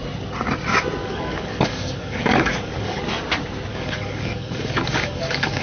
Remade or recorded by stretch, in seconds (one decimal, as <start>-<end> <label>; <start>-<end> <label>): 0.0-1.0 recorded; 1.0-3.0 remade; 3.0-3.7 recorded; 3.7-5.6 remade